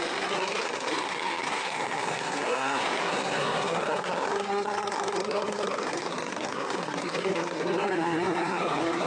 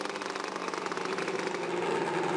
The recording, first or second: second